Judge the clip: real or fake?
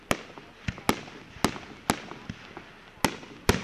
real